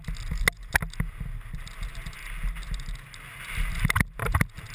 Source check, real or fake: real